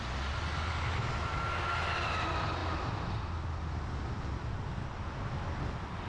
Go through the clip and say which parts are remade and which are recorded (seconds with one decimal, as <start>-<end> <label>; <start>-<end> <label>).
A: 0.0-2.6 recorded; 2.6-3.3 remade; 3.3-6.1 recorded